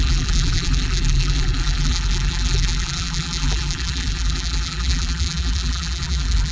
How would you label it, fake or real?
fake